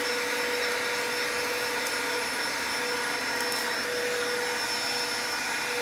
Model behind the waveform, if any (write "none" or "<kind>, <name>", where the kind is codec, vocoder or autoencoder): none